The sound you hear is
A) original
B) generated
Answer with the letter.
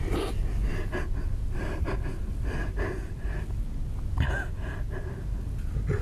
A